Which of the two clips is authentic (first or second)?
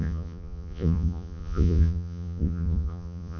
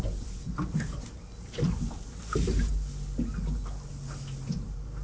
second